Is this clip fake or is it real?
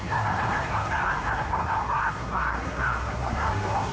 fake